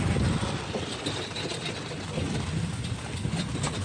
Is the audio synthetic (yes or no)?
no